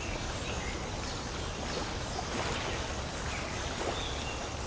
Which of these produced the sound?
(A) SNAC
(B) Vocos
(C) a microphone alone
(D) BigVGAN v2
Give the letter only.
C